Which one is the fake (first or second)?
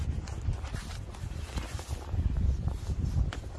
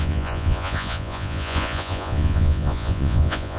second